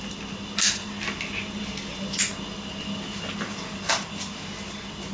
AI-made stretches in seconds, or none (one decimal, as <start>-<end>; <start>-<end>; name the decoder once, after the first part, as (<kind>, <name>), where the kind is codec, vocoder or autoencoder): none